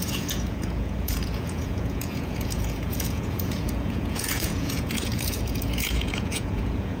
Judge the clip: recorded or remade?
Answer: remade